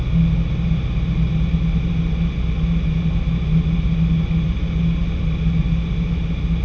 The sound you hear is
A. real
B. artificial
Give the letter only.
A